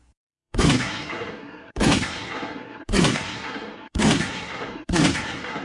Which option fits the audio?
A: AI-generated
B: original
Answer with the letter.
A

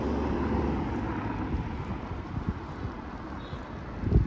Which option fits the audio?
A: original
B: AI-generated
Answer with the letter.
A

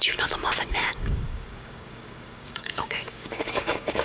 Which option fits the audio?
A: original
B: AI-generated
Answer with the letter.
B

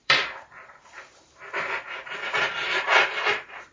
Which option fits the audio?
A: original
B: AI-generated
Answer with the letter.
B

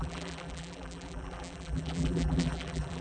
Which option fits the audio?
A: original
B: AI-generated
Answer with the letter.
B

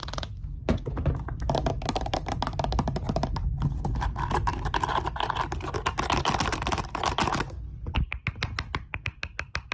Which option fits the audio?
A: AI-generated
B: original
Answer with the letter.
B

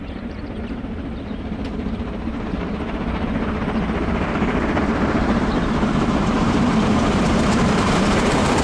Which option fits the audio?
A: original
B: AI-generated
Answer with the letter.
B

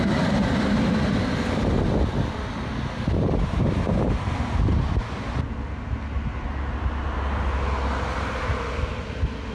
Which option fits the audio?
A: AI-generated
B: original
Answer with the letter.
B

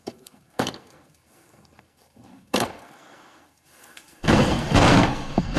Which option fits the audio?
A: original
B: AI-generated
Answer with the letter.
B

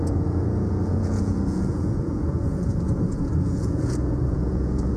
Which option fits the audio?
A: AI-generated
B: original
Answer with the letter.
A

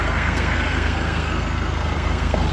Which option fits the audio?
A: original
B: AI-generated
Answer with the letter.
B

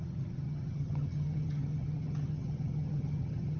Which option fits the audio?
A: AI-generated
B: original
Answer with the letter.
A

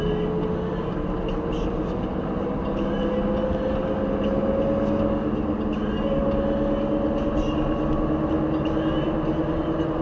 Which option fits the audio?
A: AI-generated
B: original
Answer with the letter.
B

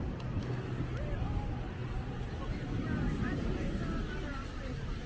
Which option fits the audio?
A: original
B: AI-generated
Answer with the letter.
A